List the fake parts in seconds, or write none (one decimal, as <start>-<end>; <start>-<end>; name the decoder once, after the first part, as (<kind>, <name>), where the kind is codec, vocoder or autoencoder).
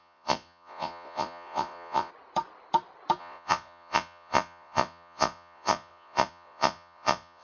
0.0-2.1 (vocoder, Vocos); 3.2-7.4